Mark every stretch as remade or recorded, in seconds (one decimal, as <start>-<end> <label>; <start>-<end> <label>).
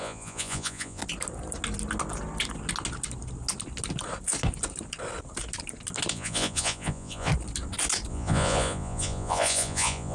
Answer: 0.0-1.0 remade; 1.0-6.1 recorded; 6.1-7.3 remade; 7.3-8.1 recorded; 8.1-10.1 remade